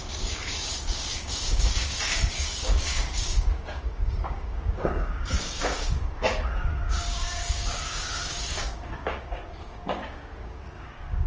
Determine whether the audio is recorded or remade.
remade